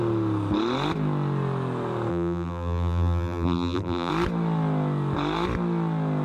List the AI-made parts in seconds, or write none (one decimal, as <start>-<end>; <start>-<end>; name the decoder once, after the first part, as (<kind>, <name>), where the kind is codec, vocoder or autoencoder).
2.1-4.1 (vocoder, BigVGAN v2)